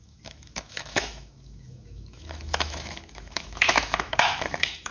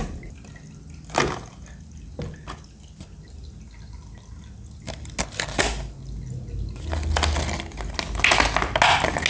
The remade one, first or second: first